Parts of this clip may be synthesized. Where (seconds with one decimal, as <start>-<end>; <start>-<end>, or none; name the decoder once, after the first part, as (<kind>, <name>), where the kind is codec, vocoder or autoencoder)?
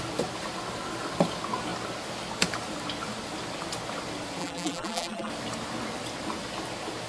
4.4-5.3 (vocoder, BigVGAN v2)